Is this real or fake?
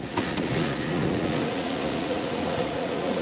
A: fake